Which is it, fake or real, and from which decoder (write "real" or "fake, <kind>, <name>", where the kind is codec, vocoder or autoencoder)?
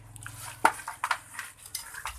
real